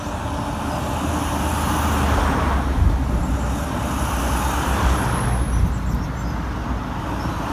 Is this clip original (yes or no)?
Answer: yes